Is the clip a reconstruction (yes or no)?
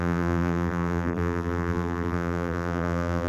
yes